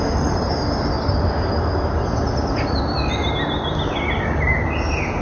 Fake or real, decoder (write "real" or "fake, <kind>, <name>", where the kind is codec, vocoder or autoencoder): real